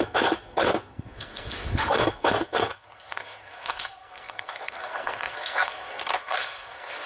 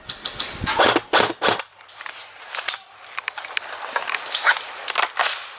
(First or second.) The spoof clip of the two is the first